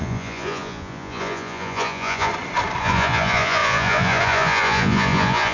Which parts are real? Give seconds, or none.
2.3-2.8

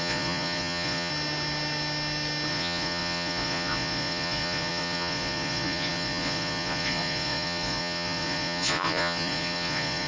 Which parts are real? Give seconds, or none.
1.1-2.5